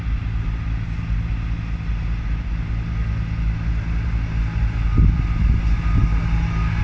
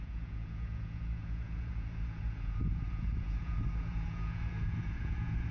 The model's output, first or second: second